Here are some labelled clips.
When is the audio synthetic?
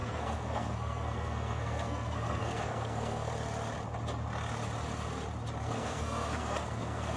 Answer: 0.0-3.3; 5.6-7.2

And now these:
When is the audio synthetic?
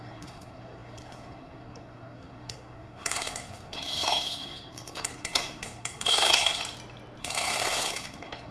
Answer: 0.0-6.6; 7.2-8.5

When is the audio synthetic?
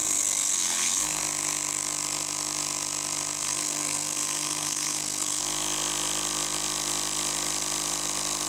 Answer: 0.0-1.2; 3.4-5.4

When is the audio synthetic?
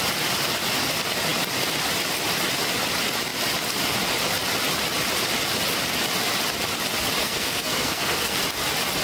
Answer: 7.2-8.4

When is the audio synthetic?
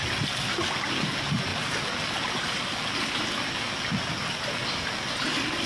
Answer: none